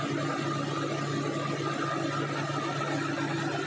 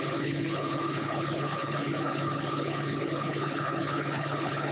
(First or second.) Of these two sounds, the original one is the first